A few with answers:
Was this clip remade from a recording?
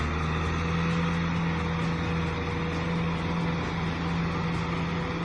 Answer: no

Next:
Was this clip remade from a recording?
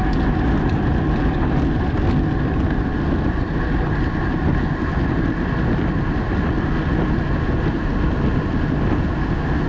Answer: no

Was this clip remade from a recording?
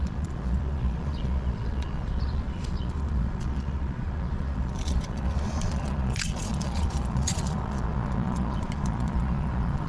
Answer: yes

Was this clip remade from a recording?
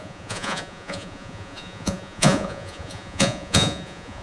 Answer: yes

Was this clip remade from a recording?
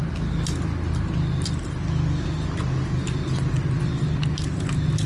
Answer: no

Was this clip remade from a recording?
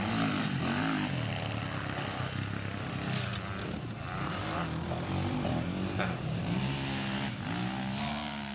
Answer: no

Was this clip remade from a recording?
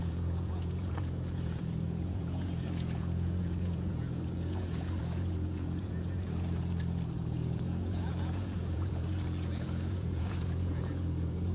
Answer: yes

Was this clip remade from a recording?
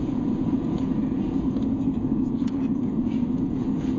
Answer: yes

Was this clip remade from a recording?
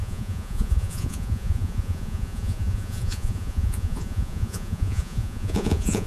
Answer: yes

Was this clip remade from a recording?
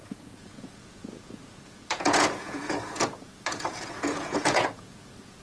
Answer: yes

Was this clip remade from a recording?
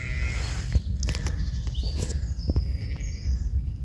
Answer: no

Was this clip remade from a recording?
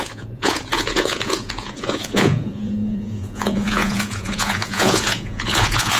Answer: yes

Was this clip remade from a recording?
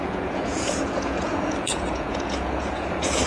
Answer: yes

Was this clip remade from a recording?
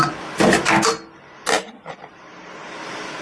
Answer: no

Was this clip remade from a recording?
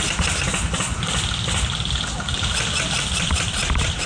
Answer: no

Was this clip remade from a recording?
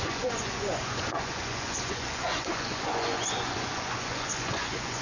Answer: yes